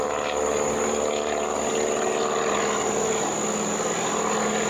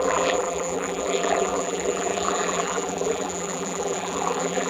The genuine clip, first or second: first